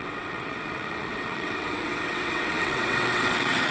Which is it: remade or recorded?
remade